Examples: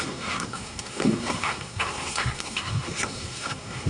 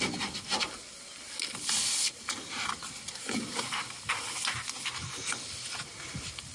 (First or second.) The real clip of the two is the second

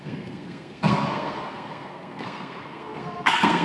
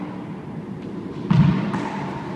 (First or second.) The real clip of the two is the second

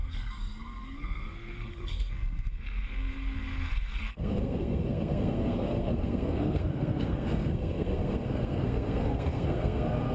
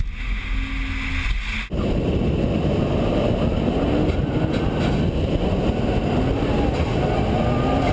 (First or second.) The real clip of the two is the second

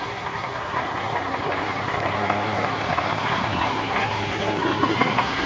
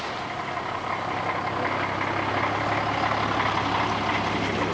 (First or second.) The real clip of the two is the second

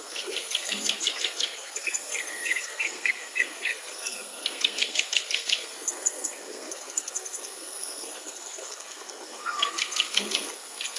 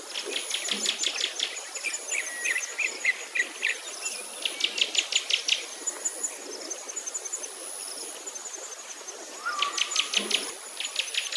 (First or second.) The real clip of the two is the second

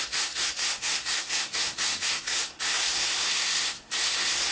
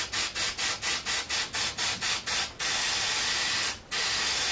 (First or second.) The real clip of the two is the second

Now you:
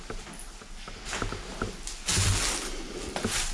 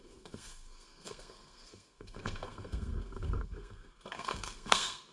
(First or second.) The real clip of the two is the first